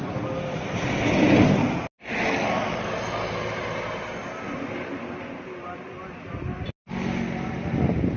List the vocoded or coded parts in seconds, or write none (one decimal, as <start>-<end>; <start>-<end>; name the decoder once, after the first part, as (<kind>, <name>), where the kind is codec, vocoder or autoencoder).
none